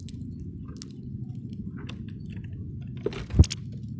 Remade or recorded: recorded